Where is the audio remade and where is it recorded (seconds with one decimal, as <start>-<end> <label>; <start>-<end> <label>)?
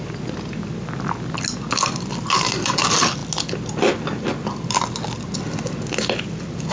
0.0-6.7 recorded